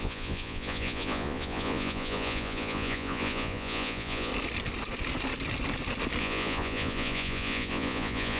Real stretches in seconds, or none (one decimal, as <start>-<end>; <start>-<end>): 4.3-6.2